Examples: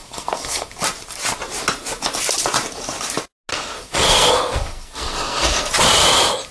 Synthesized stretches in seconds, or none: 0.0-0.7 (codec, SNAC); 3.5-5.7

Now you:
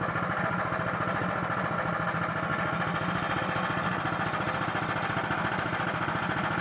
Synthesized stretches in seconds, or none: none

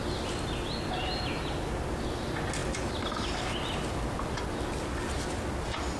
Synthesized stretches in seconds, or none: none

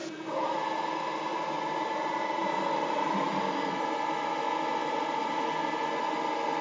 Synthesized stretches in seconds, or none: 1.3-3.4 (vocoder, BigVGAN v2); 4.8-5.4

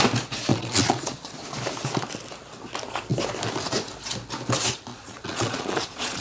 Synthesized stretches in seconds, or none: 0.5-1.3 (vocoder, Vocos); 4.9-6.2

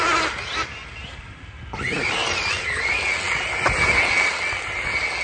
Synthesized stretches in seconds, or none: none